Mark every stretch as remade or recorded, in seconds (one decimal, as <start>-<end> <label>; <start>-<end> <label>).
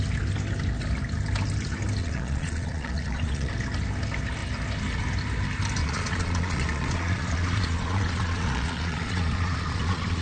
0.0-2.0 recorded; 2.0-3.5 remade; 3.5-5.8 recorded; 5.8-10.2 remade